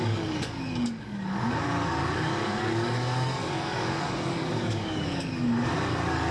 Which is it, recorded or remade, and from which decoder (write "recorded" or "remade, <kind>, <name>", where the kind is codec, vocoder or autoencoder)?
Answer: remade, codec, DAC